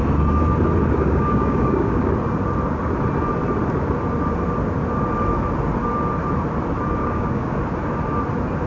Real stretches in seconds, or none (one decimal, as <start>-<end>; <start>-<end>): 0.0-1.0; 2.1-7.0; 7.5-8.7